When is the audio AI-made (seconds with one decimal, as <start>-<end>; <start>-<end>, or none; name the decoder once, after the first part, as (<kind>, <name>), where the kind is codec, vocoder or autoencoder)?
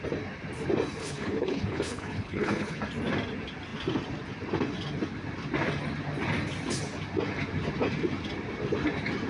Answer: 1.0-2.8 (codec, HILCodec)